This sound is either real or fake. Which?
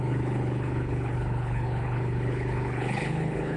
fake